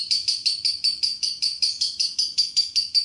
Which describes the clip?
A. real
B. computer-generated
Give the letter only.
B